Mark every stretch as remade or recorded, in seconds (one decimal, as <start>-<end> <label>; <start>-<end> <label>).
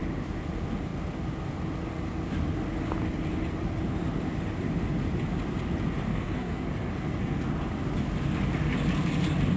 0.0-6.1 recorded; 6.1-7.5 remade; 7.5-9.6 recorded